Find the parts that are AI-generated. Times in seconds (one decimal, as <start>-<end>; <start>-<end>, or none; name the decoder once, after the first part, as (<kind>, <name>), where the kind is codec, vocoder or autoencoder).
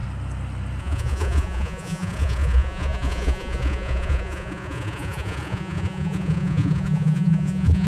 0.8-7.9 (vocoder, Vocos)